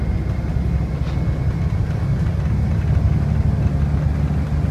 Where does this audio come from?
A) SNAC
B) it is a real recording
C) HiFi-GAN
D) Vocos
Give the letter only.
B